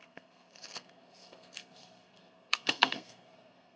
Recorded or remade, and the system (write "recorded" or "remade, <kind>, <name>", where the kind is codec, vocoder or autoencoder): remade, codec, SNAC